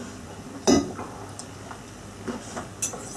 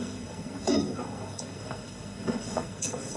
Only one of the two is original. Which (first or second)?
first